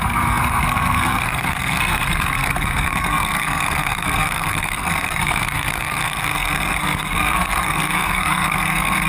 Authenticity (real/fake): fake